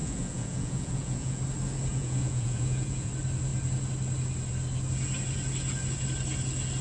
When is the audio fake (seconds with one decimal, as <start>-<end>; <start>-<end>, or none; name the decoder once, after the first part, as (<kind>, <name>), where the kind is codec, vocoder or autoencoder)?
0.0-1.4 (vocoder, Vocos); 1.9-3.1